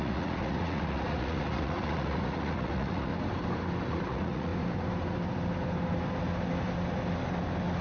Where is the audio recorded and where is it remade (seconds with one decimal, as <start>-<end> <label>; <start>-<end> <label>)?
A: 0.0-3.1 remade; 3.1-3.9 recorded; 3.9-4.5 remade; 4.5-7.8 recorded